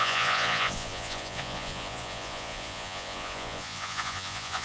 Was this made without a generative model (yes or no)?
no